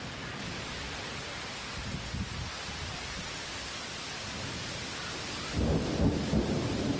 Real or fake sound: real